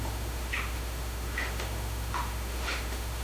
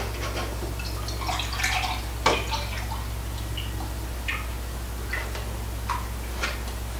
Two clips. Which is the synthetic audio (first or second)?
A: first